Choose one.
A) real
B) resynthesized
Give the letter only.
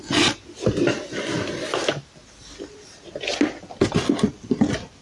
A